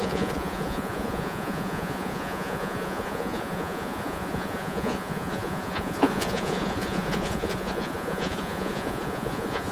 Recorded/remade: remade